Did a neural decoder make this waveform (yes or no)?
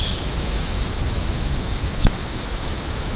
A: yes